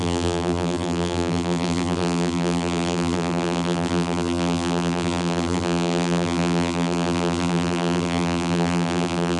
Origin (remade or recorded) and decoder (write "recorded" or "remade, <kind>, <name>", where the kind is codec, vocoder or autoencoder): remade, vocoder, BigVGAN v2